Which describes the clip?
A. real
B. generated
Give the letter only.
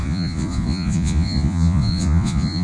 B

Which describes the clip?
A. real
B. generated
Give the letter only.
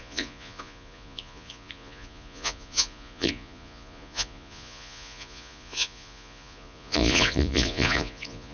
B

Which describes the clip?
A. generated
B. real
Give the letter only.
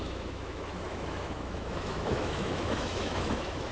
A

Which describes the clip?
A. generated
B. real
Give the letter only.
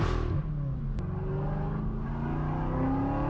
B